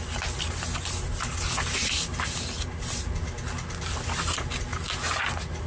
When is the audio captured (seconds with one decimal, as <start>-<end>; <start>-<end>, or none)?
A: 0.0-5.7